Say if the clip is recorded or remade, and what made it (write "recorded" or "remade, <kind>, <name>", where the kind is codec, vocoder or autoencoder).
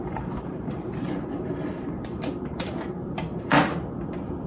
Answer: remade, vocoder, BigVGAN v2